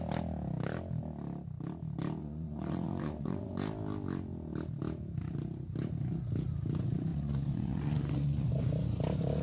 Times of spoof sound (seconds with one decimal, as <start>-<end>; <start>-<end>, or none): 2.2-3.5; 7.1-8.6